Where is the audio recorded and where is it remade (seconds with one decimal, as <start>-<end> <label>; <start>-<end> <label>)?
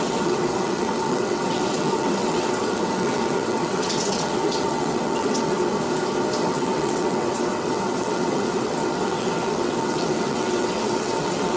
0.0-5.7 remade; 5.7-6.4 recorded; 6.4-11.6 remade